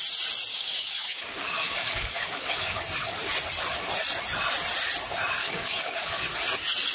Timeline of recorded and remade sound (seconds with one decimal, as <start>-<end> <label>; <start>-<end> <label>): 0.0-0.5 recorded; 0.5-2.8 remade; 2.8-5.4 recorded; 5.4-6.2 remade; 6.2-6.9 recorded